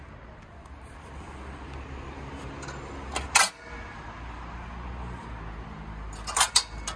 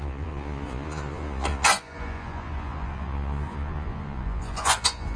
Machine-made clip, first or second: second